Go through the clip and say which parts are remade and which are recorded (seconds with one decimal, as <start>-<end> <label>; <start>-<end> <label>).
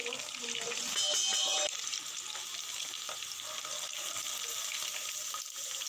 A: 0.0-5.9 recorded